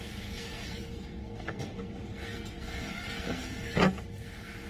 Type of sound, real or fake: fake